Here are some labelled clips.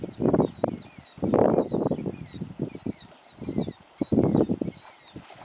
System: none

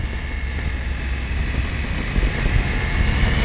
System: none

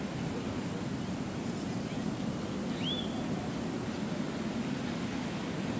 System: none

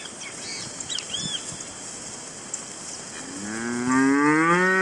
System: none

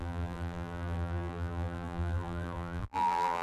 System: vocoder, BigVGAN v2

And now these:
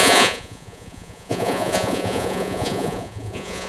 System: vocoder, Vocos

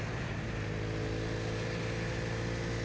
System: none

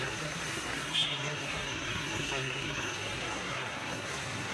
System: codec, SNAC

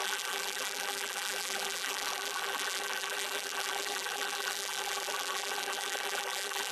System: vocoder, BigVGAN v2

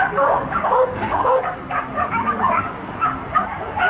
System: codec, DAC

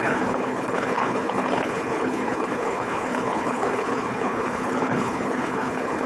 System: codec, HILCodec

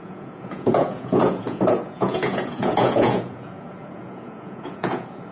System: vocoder, Vocos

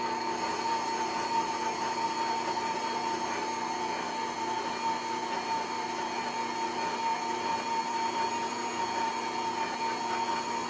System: none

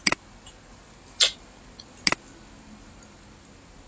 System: none